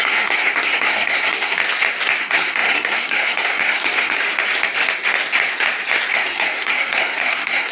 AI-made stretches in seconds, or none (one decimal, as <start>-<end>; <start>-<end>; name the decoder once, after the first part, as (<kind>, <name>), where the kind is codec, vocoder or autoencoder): 0.0-1.6 (codec, SNAC); 2.2-4.2; 6.1-7.7

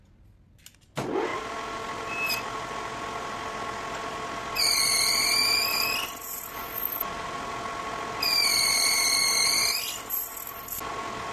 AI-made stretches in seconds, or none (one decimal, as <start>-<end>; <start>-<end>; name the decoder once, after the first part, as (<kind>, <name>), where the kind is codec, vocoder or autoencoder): none

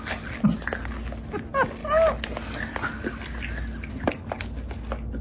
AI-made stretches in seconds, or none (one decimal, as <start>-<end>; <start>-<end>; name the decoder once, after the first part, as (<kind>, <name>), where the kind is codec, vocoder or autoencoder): none

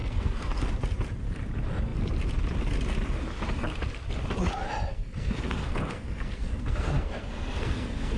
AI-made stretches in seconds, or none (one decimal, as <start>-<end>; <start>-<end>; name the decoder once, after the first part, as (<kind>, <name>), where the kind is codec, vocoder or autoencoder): 0.0-0.7 (codec, SNAC); 4.9-8.2

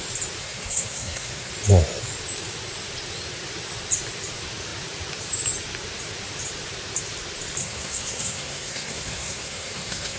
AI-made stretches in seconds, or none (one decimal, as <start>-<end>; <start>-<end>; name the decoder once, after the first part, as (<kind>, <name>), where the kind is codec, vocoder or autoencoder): 0.4-1.5 (codec, SNAC); 7.6-10.2

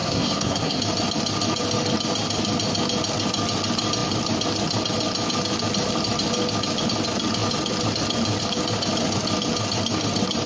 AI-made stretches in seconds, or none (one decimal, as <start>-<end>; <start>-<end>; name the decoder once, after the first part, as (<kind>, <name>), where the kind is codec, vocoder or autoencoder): 0.0-0.8 (codec, SNAC)

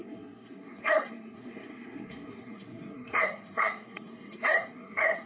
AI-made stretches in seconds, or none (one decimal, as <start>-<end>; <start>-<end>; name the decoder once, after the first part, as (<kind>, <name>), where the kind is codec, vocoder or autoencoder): 0.0-5.3 (codec, SNAC)